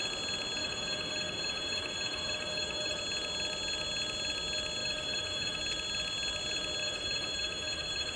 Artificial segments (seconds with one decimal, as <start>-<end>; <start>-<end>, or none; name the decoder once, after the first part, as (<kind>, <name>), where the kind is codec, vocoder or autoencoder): 0.6-3.0 (autoencoder, DAC-VAE); 4.8-5.6; 6.8-8.2

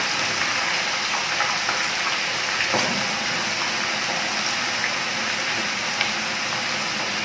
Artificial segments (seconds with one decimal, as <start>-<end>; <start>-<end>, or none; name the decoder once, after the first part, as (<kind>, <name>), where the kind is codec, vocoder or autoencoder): none